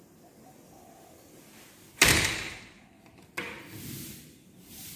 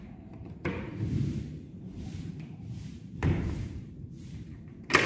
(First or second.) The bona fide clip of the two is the first